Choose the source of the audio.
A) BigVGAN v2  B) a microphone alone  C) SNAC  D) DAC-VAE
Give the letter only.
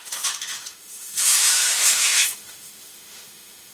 D